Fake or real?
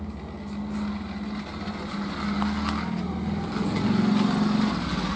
real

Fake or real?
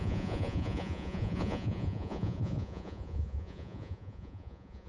fake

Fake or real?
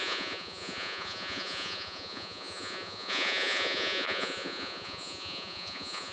fake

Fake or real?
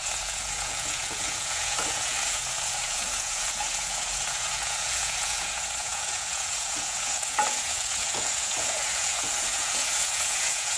fake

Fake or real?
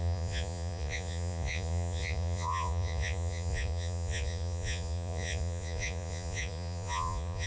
fake